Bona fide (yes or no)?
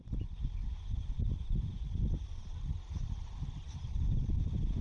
yes